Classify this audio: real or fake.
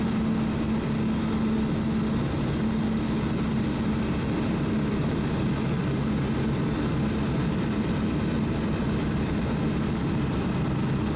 real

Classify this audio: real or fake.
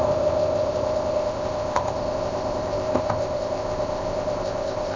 fake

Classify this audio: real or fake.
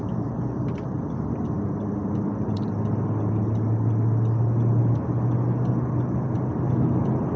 real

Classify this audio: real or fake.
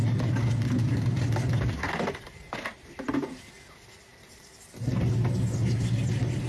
real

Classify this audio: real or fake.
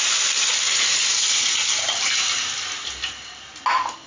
real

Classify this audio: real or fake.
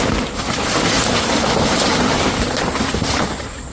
real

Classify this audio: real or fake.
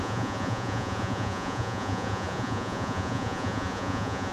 fake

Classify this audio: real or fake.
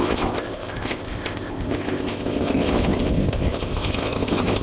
fake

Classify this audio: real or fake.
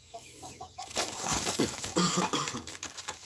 fake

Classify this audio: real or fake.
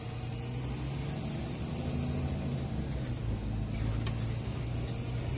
real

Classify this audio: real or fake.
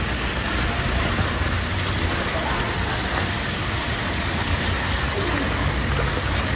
real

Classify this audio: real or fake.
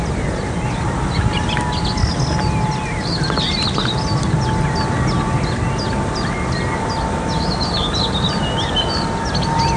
real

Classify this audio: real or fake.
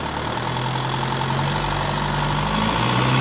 real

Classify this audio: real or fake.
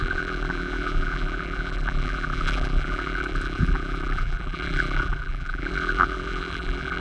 fake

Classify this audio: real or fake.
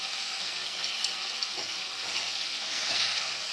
fake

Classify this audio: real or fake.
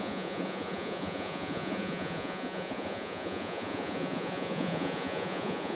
fake